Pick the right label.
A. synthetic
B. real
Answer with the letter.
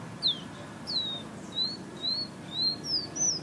B